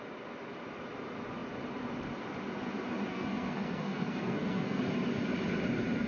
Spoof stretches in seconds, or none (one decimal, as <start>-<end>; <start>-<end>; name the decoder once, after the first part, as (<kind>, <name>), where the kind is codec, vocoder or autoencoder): 3.1-4.8 (codec, SNAC)